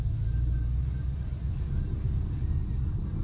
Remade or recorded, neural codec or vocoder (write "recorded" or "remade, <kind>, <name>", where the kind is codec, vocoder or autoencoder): recorded